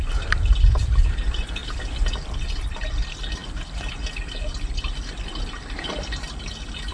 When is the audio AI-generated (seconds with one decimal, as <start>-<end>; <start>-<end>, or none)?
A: none

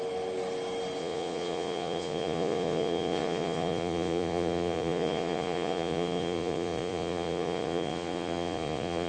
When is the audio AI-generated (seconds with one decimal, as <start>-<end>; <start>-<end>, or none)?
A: 1.0-9.1

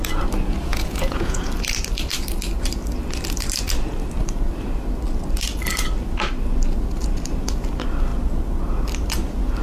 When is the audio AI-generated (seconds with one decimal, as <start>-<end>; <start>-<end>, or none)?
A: 0.7-1.4

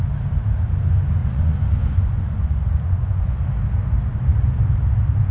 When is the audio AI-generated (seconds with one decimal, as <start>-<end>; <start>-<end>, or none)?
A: 1.2-3.4